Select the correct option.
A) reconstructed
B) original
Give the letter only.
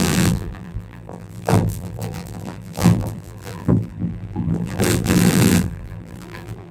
A